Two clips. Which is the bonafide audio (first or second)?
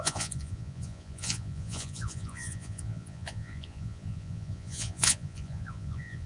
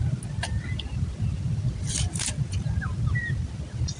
second